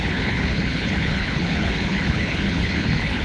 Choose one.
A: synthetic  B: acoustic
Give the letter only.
A